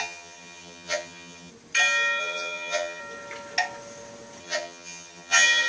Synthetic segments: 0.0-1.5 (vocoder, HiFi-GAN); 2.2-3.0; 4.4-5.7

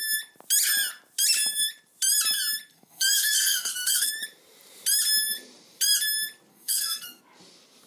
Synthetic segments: 2.7-4.1 (codec, SNAC); 6.5-7.2

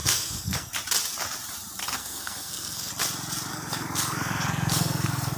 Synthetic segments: 0.0-0.7 (codec, SNAC); 1.8-2.9; 3.5-5.4

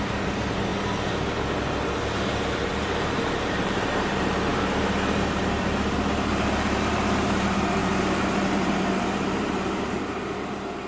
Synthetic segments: 0.0-0.7 (vocoder, BigVGAN v2); 2.6-10.9

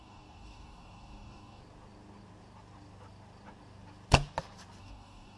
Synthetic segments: 0.0-1.6 (codec, DAC); 4.8-5.4

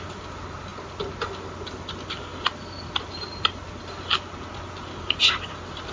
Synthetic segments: none

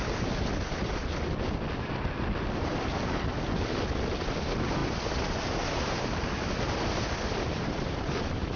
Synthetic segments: none

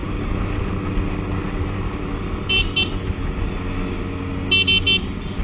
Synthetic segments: none